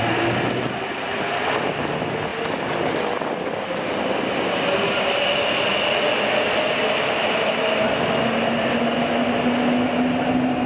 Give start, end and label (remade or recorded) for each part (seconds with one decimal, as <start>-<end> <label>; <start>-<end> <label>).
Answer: 0.0-10.7 recorded